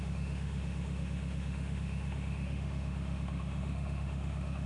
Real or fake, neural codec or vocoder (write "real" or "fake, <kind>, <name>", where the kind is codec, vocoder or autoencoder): fake, autoencoder, DAC-VAE